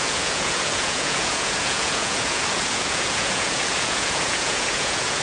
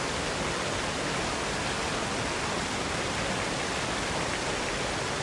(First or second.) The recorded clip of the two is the second